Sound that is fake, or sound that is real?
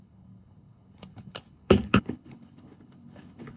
fake